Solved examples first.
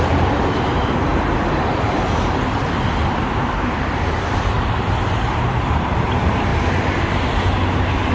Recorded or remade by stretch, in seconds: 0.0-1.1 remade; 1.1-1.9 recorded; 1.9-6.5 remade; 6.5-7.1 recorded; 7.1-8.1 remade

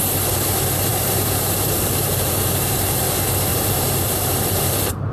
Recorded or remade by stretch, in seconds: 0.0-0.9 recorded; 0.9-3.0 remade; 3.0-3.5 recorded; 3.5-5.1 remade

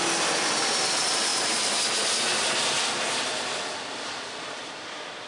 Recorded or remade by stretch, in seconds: 0.0-5.3 recorded

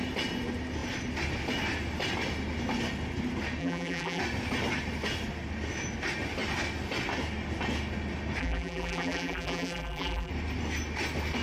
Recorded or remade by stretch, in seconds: 0.0-3.6 recorded; 3.6-4.2 remade; 4.2-8.4 recorded; 8.4-10.3 remade; 10.3-11.4 recorded

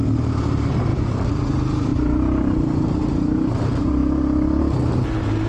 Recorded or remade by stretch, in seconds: 0.0-5.5 remade

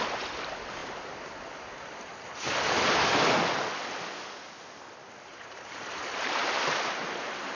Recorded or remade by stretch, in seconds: 0.0-0.8 recorded; 0.8-1.8 remade; 1.8-5.3 recorded; 5.3-6.8 remade; 6.8-7.6 recorded

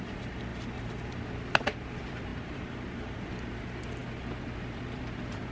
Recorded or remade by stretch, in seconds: 0.0-0.5 recorded; 0.5-1.1 remade; 1.1-2.3 recorded; 2.3-3.3 remade; 3.3-5.5 recorded

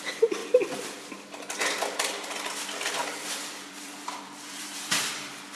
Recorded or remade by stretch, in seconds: 0.0-3.0 recorded; 3.0-4.9 remade; 4.9-5.6 recorded